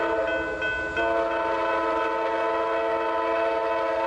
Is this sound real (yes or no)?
yes